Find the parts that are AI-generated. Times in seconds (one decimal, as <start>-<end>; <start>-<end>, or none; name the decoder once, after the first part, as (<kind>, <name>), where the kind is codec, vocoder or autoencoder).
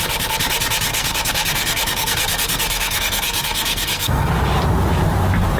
0.9-4.3 (codec, SNAC)